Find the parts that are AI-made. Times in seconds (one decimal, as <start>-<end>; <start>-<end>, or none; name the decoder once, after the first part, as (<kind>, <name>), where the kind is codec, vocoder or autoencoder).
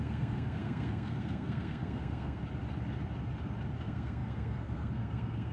0.0-2.4 (codec, SNAC); 3.8-5.5